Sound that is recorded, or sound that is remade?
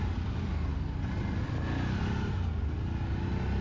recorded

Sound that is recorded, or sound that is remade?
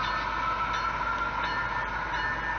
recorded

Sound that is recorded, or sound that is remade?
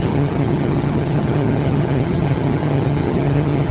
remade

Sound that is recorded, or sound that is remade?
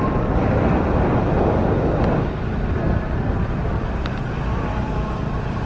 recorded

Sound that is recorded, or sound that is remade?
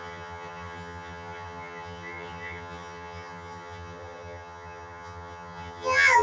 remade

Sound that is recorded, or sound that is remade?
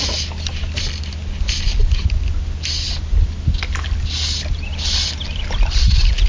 recorded